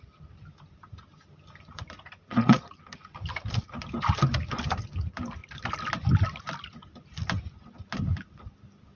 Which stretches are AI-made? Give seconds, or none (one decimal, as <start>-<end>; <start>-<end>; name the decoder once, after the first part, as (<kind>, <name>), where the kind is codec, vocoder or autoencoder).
2.2-2.7 (vocoder, Vocos)

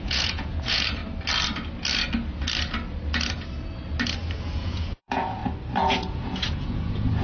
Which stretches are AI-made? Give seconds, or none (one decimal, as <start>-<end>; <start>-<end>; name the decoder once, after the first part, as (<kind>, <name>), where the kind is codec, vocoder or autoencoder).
0.0-1.0 (vocoder, Vocos); 4.3-5.4; 5.9-7.2

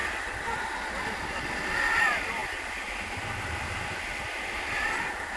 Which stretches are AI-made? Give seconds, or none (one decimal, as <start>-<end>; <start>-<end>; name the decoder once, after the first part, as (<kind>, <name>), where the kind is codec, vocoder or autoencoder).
none

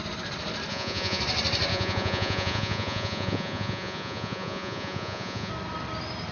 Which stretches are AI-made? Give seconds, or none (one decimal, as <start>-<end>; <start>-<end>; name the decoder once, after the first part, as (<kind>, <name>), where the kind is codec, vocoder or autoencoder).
0.7-1.2 (vocoder, Vocos); 1.7-5.5

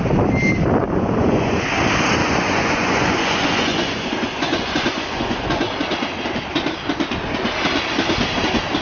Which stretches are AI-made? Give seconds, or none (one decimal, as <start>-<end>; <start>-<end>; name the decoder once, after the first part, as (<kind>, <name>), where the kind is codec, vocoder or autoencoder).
0.8-1.7 (vocoder, Vocos); 2.2-5.7

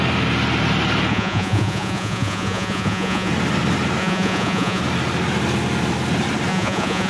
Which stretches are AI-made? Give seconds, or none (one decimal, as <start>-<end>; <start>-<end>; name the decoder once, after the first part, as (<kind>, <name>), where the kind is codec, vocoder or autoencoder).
1.1-3.3 (vocoder, Vocos); 4.0-4.8; 6.5-7.1

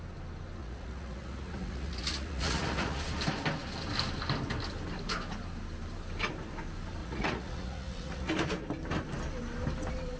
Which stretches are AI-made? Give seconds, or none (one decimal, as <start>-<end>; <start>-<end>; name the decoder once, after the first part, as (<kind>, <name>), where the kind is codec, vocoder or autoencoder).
0.6-3.0 (vocoder, Vocos); 7.0-8.3

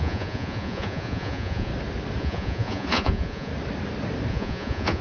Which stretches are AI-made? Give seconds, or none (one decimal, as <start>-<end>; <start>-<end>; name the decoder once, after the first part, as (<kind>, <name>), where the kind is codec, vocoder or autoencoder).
0.0-1.7 (vocoder, Vocos); 2.2-3.5; 4.3-5.0